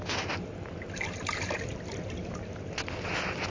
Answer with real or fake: real